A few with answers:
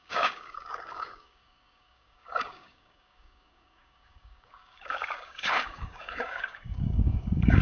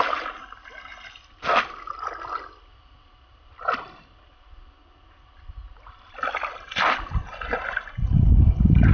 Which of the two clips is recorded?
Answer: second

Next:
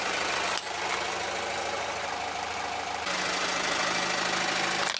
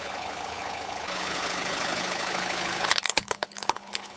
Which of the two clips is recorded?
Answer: first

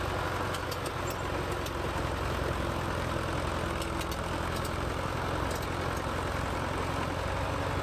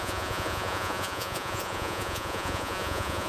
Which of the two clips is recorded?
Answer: first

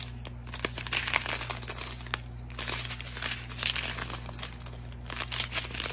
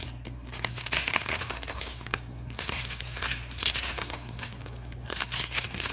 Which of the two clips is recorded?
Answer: first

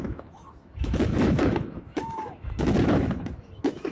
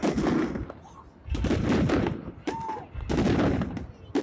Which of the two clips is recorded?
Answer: second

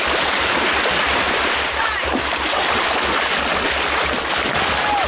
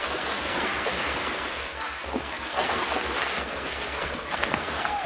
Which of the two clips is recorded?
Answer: first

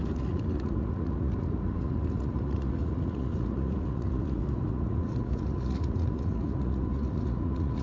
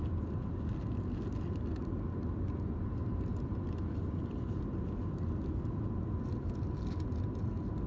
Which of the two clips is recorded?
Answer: second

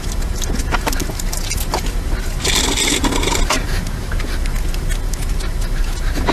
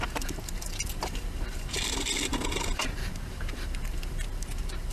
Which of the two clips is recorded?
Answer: first